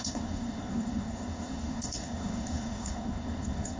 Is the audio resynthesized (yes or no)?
yes